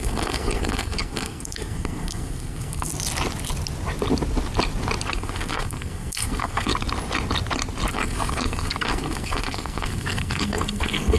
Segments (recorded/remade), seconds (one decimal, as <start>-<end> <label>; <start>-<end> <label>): 0.0-2.9 remade; 2.9-5.1 recorded; 5.1-6.7 remade; 6.7-7.9 recorded; 7.9-11.2 remade